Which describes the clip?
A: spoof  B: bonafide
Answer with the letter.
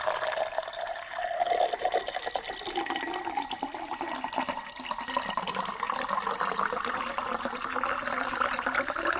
B